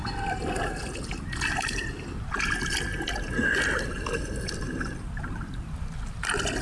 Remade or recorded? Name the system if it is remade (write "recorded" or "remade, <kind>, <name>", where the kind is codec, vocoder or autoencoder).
recorded